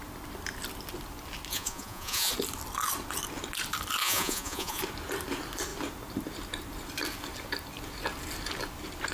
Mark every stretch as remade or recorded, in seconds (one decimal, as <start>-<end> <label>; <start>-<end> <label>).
0.0-1.5 recorded; 1.5-2.3 remade; 2.3-4.0 recorded; 4.0-4.8 remade; 4.8-9.1 recorded